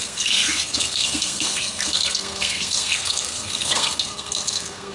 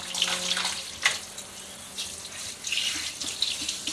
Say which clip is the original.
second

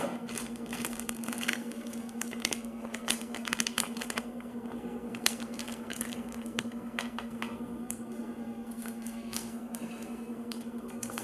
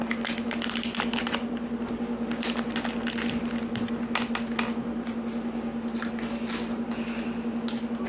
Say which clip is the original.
second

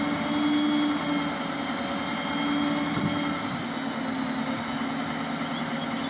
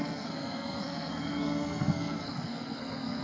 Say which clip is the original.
first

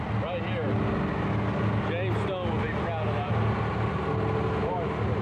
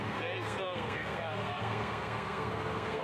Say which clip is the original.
first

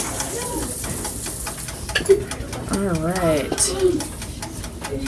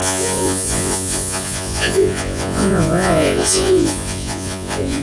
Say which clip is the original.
first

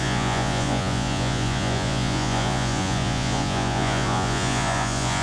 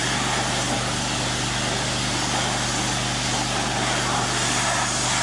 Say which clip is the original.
second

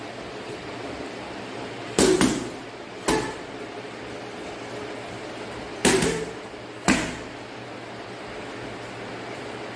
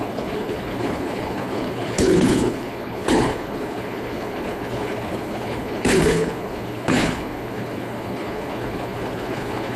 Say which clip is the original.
first